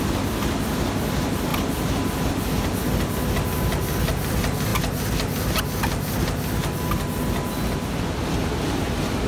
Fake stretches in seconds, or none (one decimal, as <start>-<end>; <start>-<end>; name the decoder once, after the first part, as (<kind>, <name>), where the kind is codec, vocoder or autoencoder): none